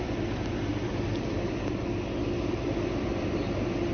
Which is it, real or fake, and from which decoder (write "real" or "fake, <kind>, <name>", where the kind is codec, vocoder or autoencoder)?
real